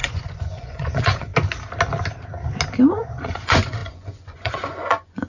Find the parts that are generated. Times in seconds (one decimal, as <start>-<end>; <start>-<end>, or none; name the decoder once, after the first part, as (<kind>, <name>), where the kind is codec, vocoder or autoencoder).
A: 0.0-1.3 (vocoder, Vocos); 2.8-5.3